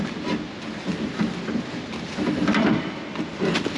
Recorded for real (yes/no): yes